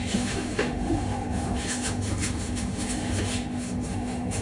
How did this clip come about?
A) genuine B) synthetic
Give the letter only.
B